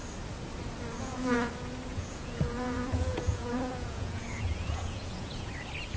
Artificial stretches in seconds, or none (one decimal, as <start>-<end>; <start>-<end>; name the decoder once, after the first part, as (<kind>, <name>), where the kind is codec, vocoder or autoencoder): 1.0-1.5 (vocoder, Vocos); 1.9-5.5